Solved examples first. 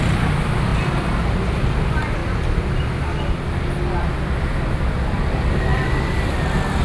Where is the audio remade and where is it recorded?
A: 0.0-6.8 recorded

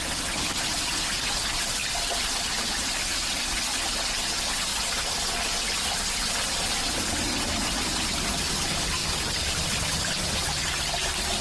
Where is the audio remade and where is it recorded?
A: 0.0-1.8 recorded; 1.8-3.4 remade; 3.4-9.0 recorded; 9.0-9.8 remade; 9.8-11.4 recorded

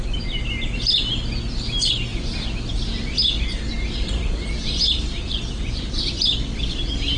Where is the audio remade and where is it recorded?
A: 0.0-2.1 recorded; 2.1-5.9 remade; 5.9-7.2 recorded

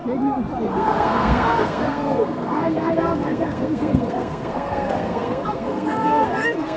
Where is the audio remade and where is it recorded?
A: 0.0-0.7 recorded; 0.7-6.8 remade

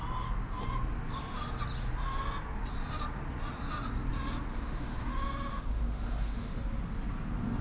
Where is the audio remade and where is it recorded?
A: 0.0-4.5 recorded; 4.5-5.1 remade; 5.1-5.5 recorded; 5.5-6.6 remade; 6.6-7.6 recorded